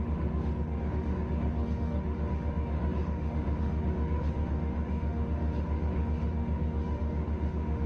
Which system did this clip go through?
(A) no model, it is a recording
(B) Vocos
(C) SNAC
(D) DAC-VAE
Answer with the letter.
D